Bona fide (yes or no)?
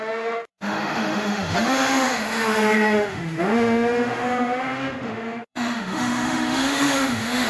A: no